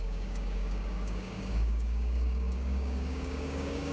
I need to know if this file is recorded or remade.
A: remade